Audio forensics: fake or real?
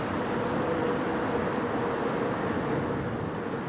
real